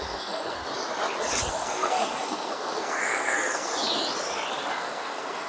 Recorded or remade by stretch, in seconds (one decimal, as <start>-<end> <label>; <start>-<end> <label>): 0.0-0.6 remade; 0.6-1.5 recorded; 1.5-3.7 remade; 3.7-4.8 recorded; 4.8-5.5 remade